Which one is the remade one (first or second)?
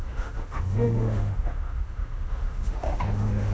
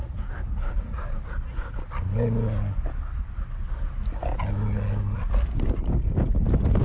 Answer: first